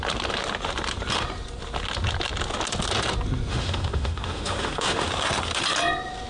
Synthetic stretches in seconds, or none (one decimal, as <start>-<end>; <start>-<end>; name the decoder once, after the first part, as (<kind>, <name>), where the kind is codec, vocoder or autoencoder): 3.5-5.1 (autoencoder, DAC-VAE)